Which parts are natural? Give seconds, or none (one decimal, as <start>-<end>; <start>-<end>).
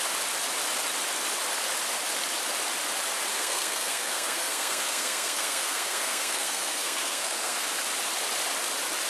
0.0-3.3; 7.8-9.1